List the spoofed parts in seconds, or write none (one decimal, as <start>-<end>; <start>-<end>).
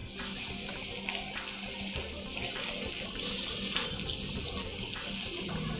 none